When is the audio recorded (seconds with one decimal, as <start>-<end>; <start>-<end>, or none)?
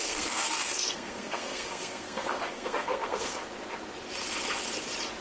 3.4-5.2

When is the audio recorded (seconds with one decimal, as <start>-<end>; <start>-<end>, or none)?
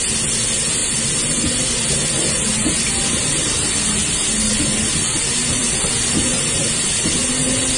0.0-7.8